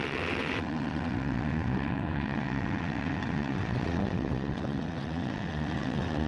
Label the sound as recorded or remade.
remade